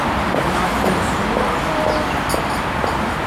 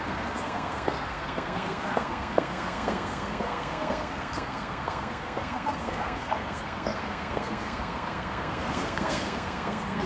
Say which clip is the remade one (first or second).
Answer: second